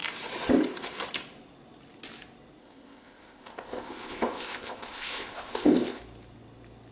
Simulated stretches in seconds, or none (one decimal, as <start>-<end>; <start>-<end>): 2.6-6.0